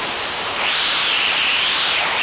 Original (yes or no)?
no